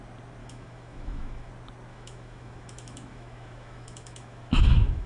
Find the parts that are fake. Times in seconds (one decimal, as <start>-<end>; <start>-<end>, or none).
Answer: 0.4-1.5; 1.9-5.1

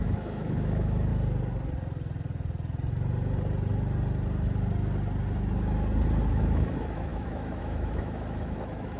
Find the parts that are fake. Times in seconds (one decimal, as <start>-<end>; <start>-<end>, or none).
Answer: 0.0-1.1; 6.3-9.0

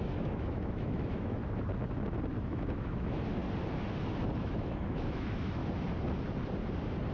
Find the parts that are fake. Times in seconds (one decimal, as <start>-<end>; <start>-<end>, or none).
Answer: 0.0-1.4; 2.4-3.4; 4.4-5.6

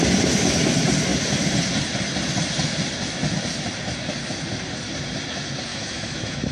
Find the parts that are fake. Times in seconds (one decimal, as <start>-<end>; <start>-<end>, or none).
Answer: 5.7-6.5

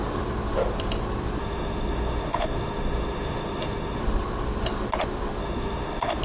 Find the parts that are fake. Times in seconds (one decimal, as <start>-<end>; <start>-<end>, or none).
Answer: 1.4-4.0; 5.4-6.2

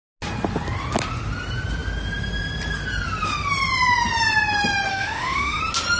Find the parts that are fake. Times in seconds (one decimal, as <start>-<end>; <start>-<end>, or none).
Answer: 4.9-5.6